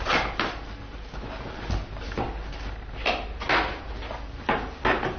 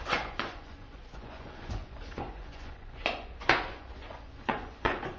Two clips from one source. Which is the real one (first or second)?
first